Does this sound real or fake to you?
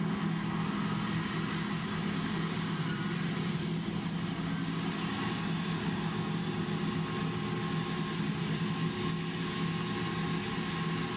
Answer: real